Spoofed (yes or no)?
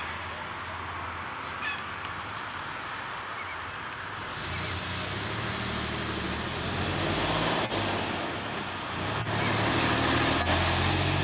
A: no